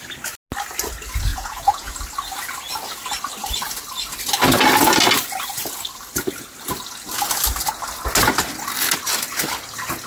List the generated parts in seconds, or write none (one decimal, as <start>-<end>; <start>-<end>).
1.3-1.9